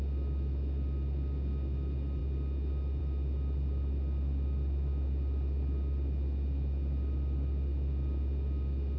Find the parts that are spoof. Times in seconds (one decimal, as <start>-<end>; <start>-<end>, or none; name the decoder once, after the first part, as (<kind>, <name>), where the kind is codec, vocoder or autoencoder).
none